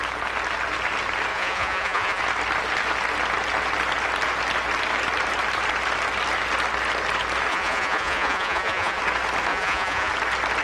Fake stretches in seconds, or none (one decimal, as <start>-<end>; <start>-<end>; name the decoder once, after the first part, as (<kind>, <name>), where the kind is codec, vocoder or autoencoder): 1.3-2.2 (vocoder, Vocos); 7.5-9.0; 9.5-10.1